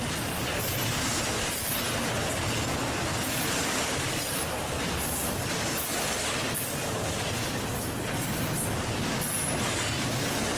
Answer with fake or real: real